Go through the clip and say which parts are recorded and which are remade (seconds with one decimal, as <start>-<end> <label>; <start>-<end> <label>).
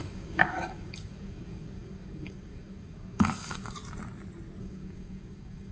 0.0-3.8 remade; 3.8-4.6 recorded; 4.6-5.7 remade